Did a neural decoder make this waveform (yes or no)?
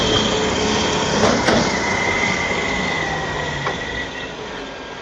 no